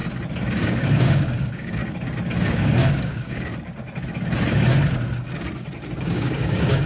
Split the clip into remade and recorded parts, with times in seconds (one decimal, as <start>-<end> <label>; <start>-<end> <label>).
0.0-0.6 recorded; 0.6-1.8 remade; 1.8-2.5 recorded; 2.5-3.5 remade; 3.5-6.0 recorded; 6.0-6.9 remade